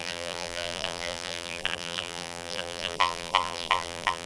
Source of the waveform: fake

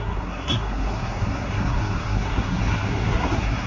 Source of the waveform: fake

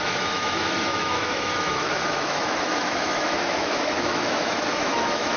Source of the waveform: fake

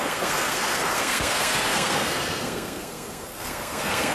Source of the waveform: fake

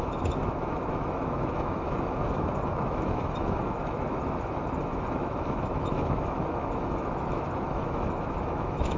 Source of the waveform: fake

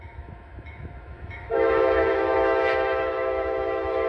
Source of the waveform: fake